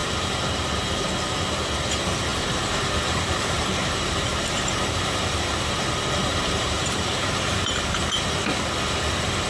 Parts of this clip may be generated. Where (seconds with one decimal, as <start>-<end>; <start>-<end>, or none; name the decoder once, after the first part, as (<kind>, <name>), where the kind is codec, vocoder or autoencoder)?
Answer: 2.3-5.7 (vocoder, BigVGAN v2); 6.3-8.2